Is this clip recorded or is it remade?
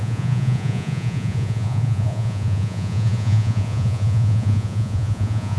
remade